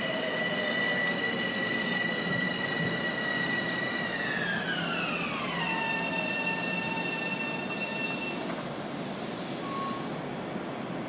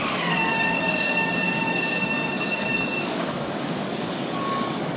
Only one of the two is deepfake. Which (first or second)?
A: second